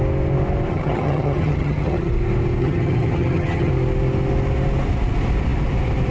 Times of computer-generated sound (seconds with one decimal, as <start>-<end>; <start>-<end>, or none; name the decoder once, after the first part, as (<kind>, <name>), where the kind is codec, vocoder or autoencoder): 0.7-2.1 (vocoder, HiFi-GAN); 2.6-3.7